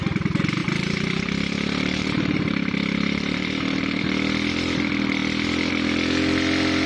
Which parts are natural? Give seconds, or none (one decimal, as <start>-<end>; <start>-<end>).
0.0-0.6; 4.0-6.9